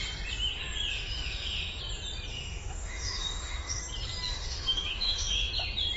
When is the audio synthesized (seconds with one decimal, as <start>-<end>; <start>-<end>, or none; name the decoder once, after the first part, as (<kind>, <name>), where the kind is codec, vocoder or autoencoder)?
0.9-1.8 (autoencoder, DAC-VAE); 2.3-3.8; 4.3-5.5